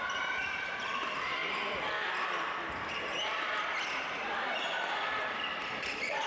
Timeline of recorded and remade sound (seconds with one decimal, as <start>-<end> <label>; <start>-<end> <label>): 0.0-6.3 remade